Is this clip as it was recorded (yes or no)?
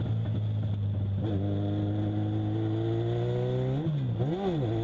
yes